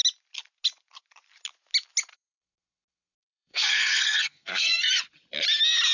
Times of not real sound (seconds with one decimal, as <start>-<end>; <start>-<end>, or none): 2.1-4.9